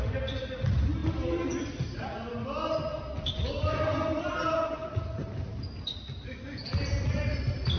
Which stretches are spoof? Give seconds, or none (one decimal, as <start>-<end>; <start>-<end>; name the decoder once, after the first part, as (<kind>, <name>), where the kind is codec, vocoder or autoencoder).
none